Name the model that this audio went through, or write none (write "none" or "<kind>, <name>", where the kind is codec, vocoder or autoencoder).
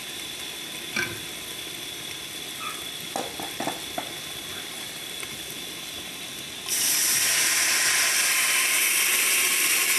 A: none